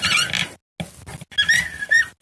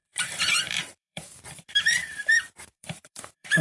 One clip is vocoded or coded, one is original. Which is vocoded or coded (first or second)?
second